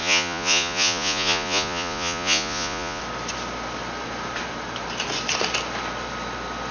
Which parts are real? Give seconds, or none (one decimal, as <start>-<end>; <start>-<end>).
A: 3.0-6.7